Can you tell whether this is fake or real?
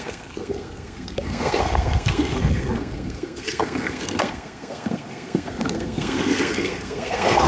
fake